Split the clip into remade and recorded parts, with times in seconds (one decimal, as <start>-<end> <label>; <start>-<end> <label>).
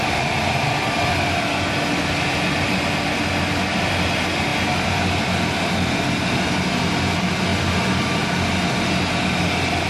0.0-9.9 recorded